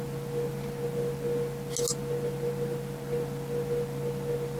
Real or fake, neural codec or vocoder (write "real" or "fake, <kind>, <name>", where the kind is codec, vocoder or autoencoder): real